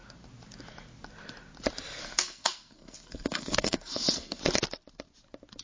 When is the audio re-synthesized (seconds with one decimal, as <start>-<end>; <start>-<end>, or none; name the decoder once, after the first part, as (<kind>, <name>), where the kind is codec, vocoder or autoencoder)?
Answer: 2.0-4.4 (codec, SNAC)